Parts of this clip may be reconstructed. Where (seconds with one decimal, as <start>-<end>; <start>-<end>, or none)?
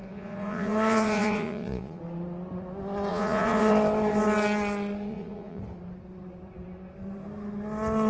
0.0-2.0; 3.1-3.7; 5.1-5.6